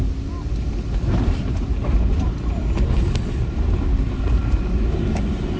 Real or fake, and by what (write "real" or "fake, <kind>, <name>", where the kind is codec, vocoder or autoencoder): real